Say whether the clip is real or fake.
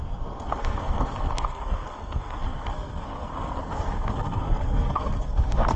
fake